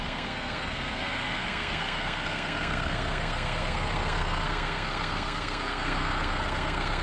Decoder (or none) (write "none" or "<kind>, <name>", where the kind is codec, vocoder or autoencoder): codec, SNAC